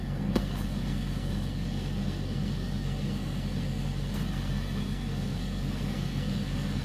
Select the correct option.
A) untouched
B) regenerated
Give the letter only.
B